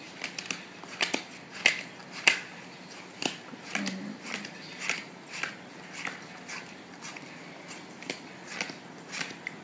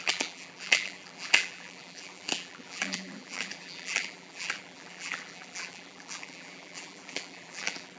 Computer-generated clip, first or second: second